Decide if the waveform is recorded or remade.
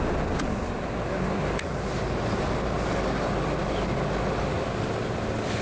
recorded